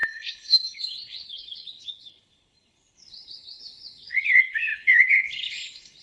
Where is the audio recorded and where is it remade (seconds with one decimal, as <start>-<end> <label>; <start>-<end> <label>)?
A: 0.0-6.0 remade